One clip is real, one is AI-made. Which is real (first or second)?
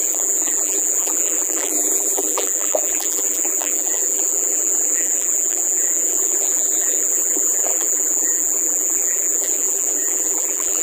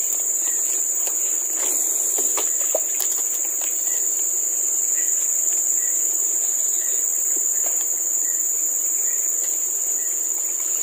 second